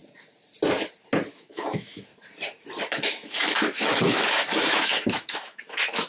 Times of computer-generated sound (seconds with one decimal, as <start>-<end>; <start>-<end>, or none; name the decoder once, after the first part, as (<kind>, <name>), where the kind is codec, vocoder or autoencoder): 1.3-2.1 (autoencoder, DAC-VAE); 2.8-6.1